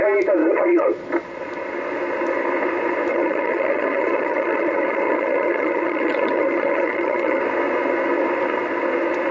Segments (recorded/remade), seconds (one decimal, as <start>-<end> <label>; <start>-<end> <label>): 0.0-0.4 recorded; 0.4-0.9 remade; 0.9-3.1 recorded; 3.1-7.4 remade; 7.4-9.3 recorded